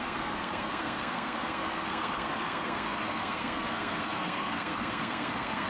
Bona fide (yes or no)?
no